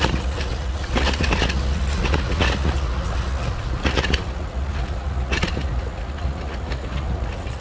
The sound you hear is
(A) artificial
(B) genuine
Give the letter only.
A